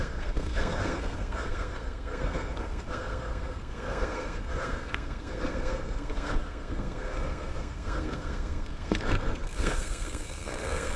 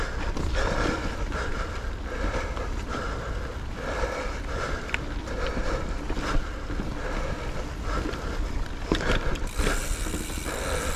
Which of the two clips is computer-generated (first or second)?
first